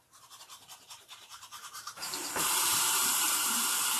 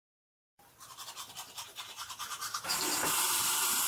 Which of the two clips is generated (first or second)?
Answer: first